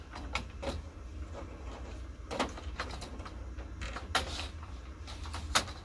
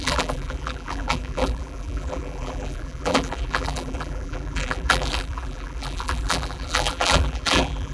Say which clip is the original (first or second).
first